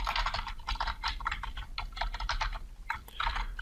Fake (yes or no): no